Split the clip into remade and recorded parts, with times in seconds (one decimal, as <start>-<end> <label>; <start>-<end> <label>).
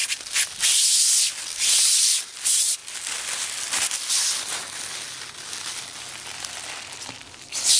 0.0-7.8 recorded